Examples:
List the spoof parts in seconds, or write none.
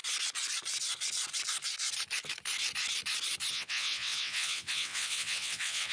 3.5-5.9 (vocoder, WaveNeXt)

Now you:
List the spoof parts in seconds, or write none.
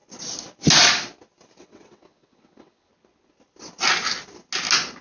1.6-2.9 (vocoder, WaveNeXt)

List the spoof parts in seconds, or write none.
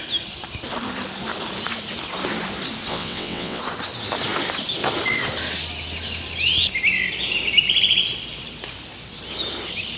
2.9-3.6 (vocoder, WaveNeXt)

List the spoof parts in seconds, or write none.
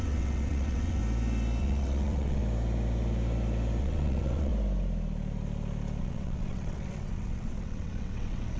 0.0-1.0 (vocoder, WaveNeXt); 1.6-2.4; 3.8-4.5; 6.0-8.6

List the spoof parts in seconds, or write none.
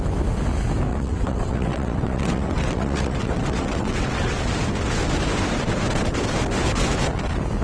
0.9-4.4 (vocoder, WaveNeXt)